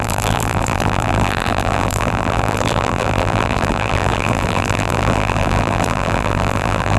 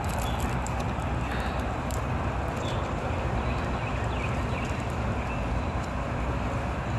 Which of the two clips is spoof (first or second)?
first